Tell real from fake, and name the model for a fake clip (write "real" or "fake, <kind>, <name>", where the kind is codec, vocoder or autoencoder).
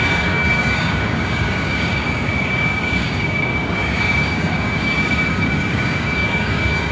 fake, codec, DAC